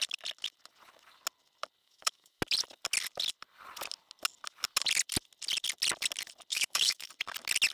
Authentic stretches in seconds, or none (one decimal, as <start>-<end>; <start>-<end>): 0.0-1.8; 2.4-6.5; 7.1-7.7